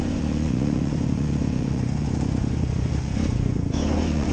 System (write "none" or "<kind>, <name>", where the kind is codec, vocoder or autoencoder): vocoder, Vocos